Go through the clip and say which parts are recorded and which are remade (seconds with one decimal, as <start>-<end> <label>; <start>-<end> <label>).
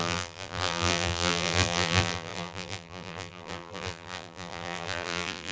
0.0-5.5 remade